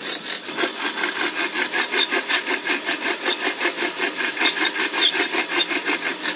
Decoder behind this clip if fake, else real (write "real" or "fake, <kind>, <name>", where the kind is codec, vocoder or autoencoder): fake, vocoder, BigVGAN v2